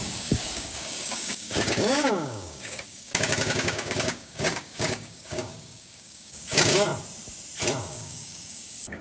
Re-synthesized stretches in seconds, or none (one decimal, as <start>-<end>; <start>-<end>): 0.0-6.9; 7.8-9.0